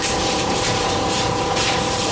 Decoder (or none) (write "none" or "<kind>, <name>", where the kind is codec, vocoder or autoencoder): vocoder, BigVGAN v2